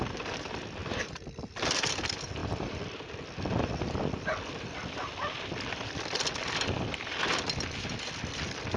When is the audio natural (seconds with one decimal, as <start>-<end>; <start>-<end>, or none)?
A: 0.0-2.4; 6.5-8.8

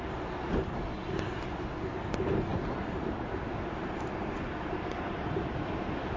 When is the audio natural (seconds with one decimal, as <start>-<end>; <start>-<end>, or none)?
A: 0.0-2.5; 4.3-6.2

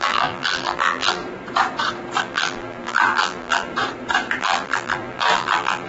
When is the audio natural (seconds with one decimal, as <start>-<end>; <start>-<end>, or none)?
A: 1.2-2.2; 3.7-4.4

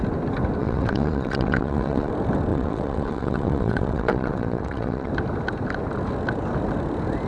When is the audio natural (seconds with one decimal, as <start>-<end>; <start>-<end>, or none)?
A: 0.0-0.6; 2.1-2.5; 5.1-7.3

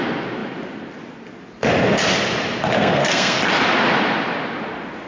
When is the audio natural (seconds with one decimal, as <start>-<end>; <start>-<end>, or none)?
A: 0.0-2.8; 3.4-5.1

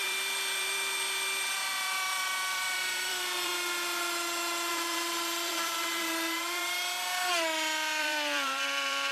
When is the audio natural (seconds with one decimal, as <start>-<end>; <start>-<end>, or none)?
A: 3.5-4.7; 6.6-8.0